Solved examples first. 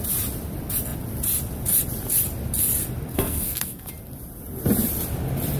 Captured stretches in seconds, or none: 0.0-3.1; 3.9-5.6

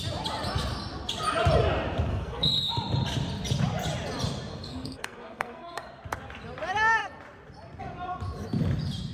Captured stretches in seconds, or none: 0.0-2.1; 2.7-4.5; 6.0-9.1

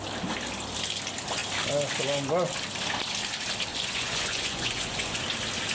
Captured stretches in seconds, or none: 0.0-3.7; 5.2-5.7

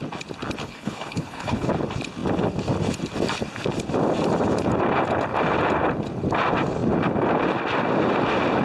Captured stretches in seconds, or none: 0.0-0.6; 1.7-8.6